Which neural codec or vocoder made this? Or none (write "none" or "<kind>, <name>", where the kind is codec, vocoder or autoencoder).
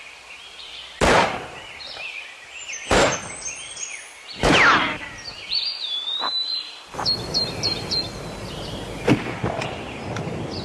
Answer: vocoder, BigVGAN v2